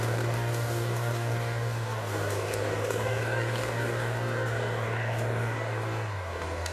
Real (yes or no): no